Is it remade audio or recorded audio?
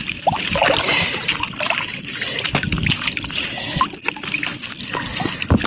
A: recorded